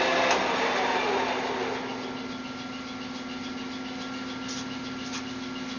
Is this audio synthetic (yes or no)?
no